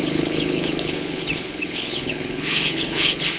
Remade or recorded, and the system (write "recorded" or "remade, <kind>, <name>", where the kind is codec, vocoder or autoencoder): remade, codec, HILCodec